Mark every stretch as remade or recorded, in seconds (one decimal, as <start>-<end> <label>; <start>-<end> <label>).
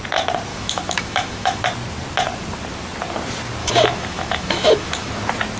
0.0-0.5 recorded; 0.5-1.6 remade; 1.6-3.6 recorded; 3.6-5.1 remade; 5.1-5.6 recorded